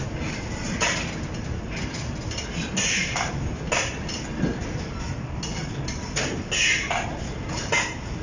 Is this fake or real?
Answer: real